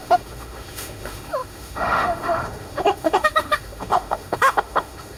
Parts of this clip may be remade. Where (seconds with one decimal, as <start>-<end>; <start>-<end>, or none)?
0.0-5.2